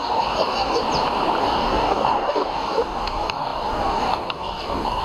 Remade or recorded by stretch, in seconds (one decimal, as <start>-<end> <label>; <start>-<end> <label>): 0.0-0.8 remade; 0.8-1.4 recorded; 1.4-5.0 remade